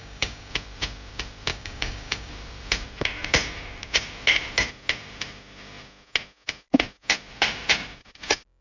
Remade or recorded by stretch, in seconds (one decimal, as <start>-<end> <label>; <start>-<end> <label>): 0.0-0.5 remade; 0.5-1.5 recorded; 1.5-2.3 remade; 2.3-8.6 recorded